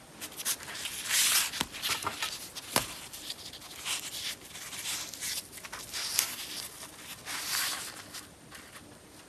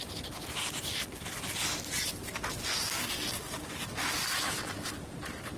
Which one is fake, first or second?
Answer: first